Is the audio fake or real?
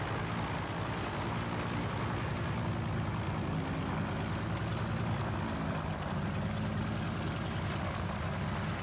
real